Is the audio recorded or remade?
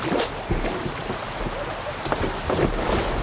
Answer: recorded